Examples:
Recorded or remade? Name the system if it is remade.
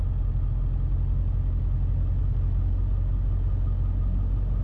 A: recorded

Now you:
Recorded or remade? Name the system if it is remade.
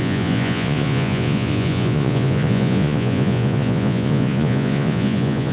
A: remade, vocoder, Vocos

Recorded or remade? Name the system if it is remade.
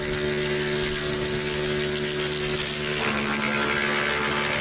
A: recorded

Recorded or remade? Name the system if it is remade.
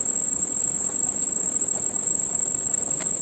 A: recorded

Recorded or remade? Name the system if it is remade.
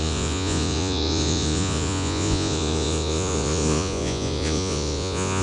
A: remade, vocoder, Vocos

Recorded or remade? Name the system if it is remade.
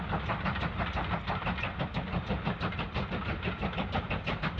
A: recorded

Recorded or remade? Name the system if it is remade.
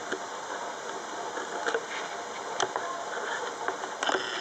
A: recorded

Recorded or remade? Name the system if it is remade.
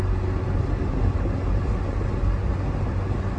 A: recorded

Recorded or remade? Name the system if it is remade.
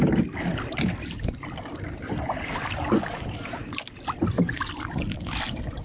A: recorded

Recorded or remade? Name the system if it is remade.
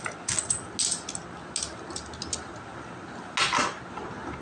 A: recorded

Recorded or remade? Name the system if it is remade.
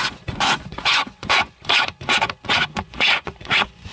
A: remade, vocoder, Vocos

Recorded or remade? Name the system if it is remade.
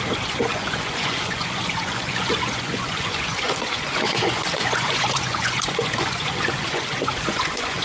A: remade, vocoder, Vocos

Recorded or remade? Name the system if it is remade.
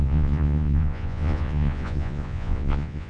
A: remade, vocoder, Vocos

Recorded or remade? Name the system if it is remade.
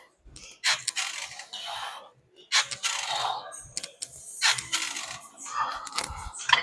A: recorded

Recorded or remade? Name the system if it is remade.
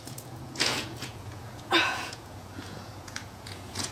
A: remade, vocoder, Vocos